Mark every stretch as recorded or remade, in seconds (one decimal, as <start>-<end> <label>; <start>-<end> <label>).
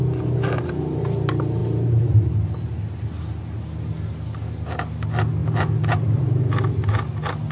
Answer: 0.0-7.5 recorded